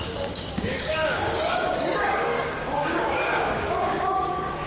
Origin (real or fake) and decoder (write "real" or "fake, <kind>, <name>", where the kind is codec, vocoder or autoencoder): fake, codec, DAC